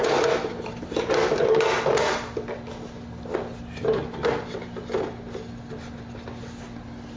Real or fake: real